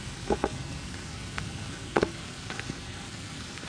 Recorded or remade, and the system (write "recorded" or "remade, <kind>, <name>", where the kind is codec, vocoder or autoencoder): remade, codec, SNAC